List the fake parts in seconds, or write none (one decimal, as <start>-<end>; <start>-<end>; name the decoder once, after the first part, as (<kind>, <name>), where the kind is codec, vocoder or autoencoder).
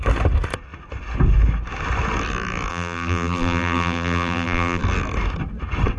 2.7-4.8 (vocoder, BigVGAN v2)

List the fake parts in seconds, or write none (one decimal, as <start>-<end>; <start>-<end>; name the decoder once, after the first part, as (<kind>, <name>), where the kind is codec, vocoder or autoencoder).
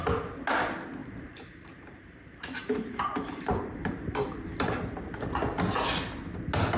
1.0-4.7 (vocoder, BigVGAN v2)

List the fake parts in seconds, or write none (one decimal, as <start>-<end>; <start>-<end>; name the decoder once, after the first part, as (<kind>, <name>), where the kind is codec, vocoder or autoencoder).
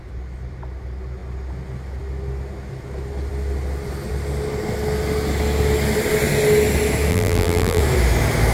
7.1-7.8 (vocoder, BigVGAN v2)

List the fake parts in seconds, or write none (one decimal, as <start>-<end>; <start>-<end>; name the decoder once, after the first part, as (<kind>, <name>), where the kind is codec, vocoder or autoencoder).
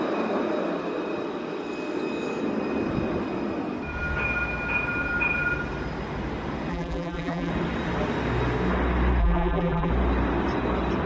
6.7-7.5 (vocoder, BigVGAN v2); 9.2-9.9